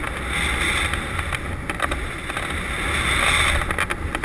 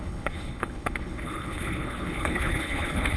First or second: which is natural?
first